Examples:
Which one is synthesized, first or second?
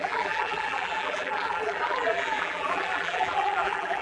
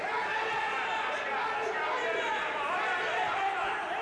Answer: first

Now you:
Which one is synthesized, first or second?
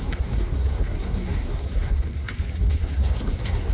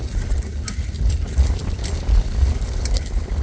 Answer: first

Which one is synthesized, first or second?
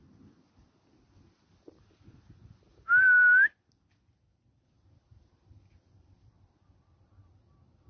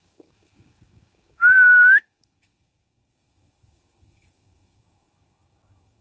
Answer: second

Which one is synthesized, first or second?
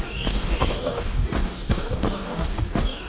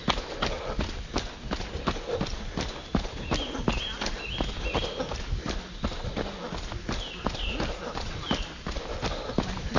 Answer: first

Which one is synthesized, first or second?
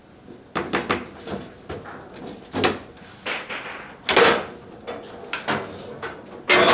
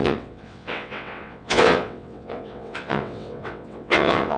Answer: second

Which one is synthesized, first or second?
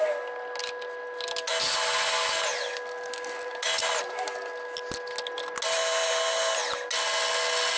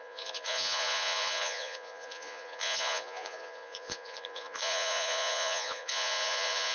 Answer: second